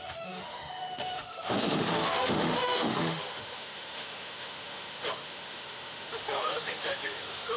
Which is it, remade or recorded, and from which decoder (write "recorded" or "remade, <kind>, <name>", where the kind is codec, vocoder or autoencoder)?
remade, autoencoder, DAC-VAE